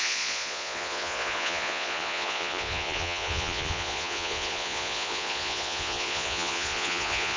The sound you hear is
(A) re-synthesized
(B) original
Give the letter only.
A